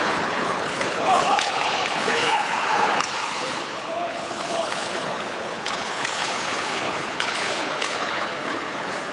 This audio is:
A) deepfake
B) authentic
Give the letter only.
A